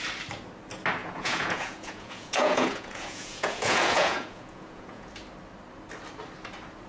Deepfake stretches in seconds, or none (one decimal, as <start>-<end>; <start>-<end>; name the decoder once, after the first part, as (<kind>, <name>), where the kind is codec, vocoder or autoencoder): 1.0-5.1 (vocoder, Vocos)